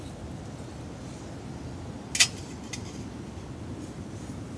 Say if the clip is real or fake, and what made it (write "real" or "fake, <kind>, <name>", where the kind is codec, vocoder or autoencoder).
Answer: real